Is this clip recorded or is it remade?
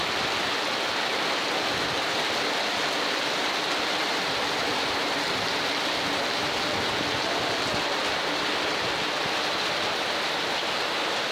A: recorded